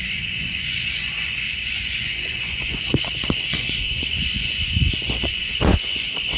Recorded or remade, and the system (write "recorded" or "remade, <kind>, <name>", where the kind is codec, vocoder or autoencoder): remade, vocoder, Vocos